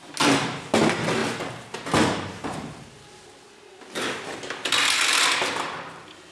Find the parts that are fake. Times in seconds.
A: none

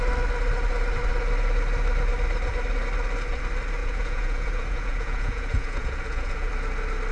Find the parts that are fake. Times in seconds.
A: 3.8-6.5

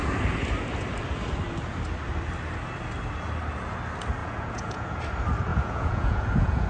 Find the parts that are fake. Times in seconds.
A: 4.2-5.0; 5.5-6.7

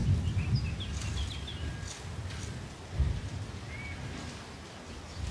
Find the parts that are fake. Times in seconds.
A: none

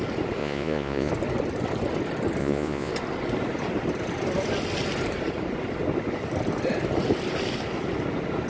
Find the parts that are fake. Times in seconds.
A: 0.4-1.1; 2.4-2.9

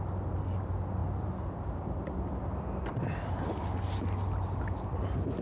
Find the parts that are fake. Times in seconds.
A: none